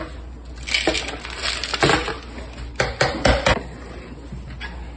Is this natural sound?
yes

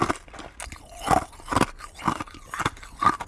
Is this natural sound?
yes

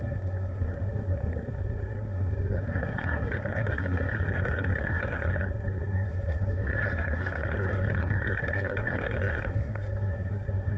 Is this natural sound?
no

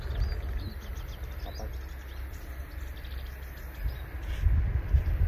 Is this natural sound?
yes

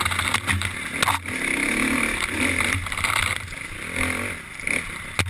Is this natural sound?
yes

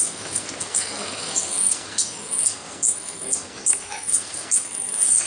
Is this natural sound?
no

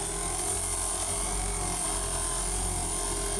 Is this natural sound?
yes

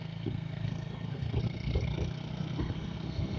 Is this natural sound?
no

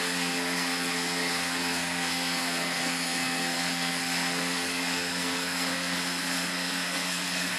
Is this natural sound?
no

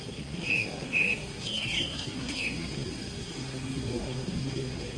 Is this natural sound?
no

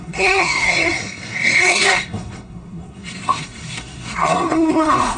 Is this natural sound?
no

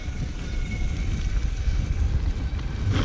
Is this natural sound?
yes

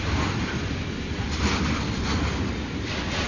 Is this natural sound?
yes